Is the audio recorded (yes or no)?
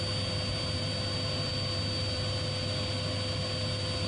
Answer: yes